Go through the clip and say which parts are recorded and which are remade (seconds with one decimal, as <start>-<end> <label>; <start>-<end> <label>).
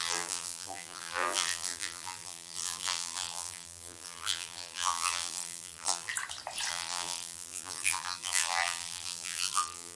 0.0-6.1 remade; 6.1-6.7 recorded; 6.7-9.9 remade